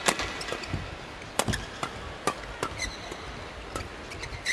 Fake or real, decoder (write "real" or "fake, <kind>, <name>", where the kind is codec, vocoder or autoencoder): real